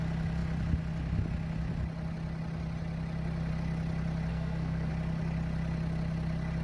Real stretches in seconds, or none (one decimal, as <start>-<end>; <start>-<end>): 0.0-4.3; 4.9-6.6